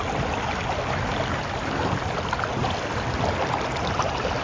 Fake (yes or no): no